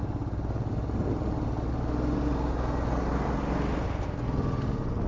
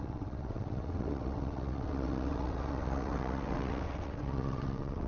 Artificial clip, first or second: second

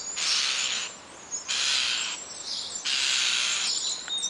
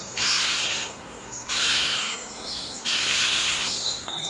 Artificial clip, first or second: second